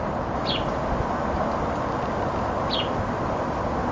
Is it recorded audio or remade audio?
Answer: recorded